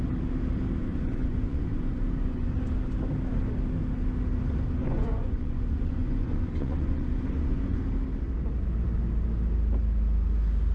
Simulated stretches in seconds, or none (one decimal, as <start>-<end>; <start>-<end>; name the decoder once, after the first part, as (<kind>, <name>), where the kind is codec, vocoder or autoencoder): 0.8-2.5 (vocoder, Vocos); 4.8-7.8